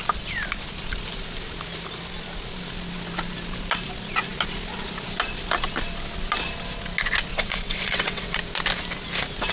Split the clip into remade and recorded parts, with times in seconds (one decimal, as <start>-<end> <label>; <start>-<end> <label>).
0.0-7.3 recorded; 7.3-8.4 remade; 8.4-9.5 recorded